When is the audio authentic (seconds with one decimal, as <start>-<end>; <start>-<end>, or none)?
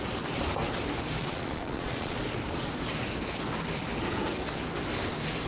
0.0-1.2; 2.2-5.5